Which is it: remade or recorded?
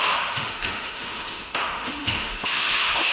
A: remade